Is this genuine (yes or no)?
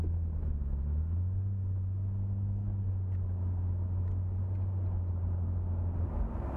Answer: yes